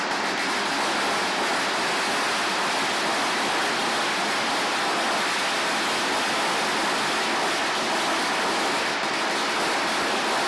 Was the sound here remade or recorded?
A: recorded